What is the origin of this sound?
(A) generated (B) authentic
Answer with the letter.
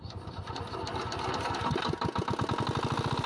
B